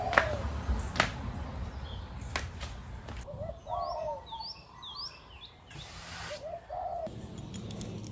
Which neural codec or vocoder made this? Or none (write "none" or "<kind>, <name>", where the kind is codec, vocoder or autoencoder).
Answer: none